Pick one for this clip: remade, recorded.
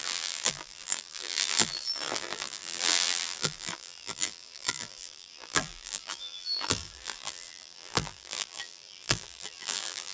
remade